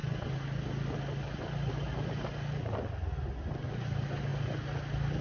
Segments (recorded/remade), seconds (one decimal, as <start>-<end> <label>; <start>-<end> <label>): 0.0-5.2 recorded